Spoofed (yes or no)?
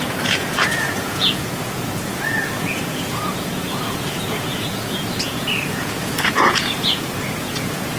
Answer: yes